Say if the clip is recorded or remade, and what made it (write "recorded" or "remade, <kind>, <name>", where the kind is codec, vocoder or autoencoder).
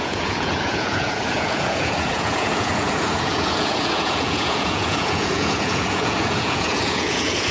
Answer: remade, vocoder, Vocos